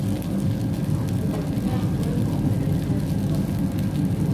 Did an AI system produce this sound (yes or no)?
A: no